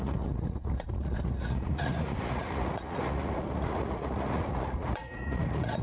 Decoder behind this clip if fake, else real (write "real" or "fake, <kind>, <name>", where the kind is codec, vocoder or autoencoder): fake, vocoder, Vocos